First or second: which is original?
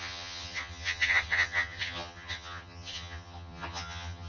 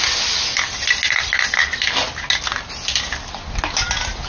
second